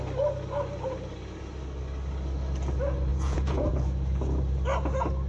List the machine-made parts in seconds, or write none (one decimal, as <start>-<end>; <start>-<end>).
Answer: 3.1-3.7